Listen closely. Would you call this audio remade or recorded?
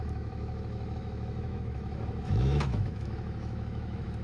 remade